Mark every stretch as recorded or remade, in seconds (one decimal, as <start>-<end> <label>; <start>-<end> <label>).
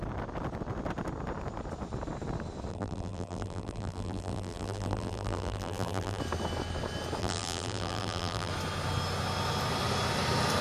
0.0-2.7 recorded; 2.7-6.2 remade; 6.2-7.2 recorded; 7.2-8.5 remade; 8.5-10.6 recorded